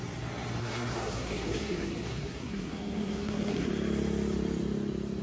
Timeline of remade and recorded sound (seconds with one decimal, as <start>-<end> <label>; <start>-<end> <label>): 0.0-0.6 recorded; 0.6-3.7 remade; 3.7-5.2 recorded